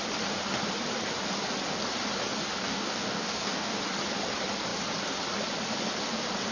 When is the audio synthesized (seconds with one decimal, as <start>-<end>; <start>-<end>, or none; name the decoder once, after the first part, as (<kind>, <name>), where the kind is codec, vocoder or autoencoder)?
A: 2.6-3.8 (codec, DAC)